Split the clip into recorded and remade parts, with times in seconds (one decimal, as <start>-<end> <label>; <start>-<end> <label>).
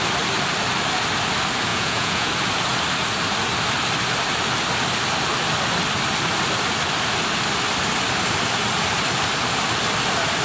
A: 0.0-1.7 recorded; 1.7-2.3 remade; 2.3-10.4 recorded